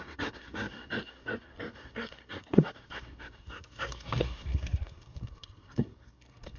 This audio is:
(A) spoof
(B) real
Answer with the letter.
A